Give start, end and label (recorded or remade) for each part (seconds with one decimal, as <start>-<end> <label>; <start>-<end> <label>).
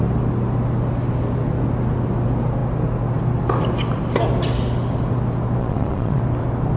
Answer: 0.0-5.6 recorded; 5.6-6.2 remade; 6.2-6.8 recorded